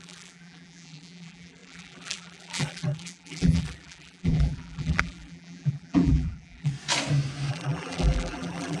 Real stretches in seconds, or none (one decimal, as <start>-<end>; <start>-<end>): 6.7-7.5